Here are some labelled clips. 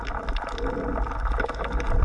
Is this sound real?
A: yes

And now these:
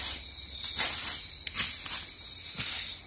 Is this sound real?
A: yes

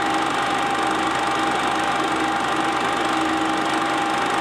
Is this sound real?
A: yes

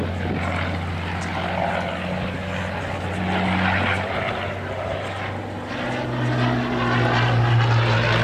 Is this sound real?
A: yes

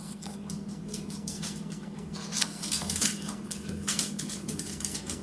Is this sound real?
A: no